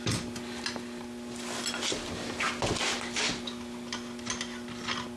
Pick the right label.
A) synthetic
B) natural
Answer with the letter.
B